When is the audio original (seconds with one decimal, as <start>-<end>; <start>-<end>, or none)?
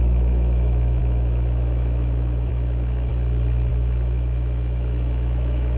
3.1-3.7